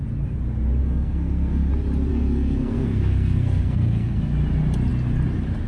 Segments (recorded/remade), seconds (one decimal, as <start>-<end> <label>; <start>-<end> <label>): 0.0-0.8 recorded; 0.8-1.7 remade; 1.7-2.1 recorded; 2.1-4.2 remade; 4.2-5.7 recorded